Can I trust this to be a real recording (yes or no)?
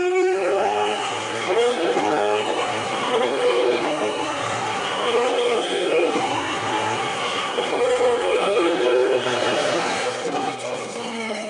no